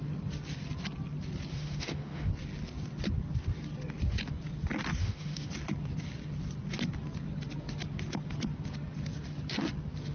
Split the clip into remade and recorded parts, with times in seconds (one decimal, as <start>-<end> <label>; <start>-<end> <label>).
0.0-1.5 recorded; 1.5-2.3 remade; 2.3-5.0 recorded; 5.0-5.5 remade; 5.5-10.1 recorded